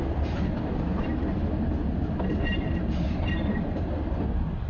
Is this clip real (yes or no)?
yes